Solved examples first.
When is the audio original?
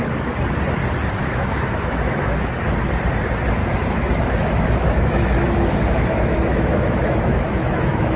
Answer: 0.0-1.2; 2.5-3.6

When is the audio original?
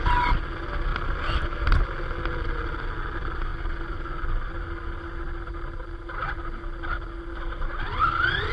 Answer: 0.0-8.5